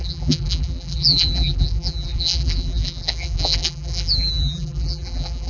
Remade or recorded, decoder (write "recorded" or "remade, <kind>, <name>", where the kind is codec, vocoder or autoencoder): remade, vocoder, BigVGAN v2